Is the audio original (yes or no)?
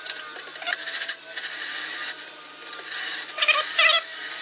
yes